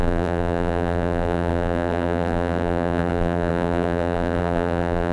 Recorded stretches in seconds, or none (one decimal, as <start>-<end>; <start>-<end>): none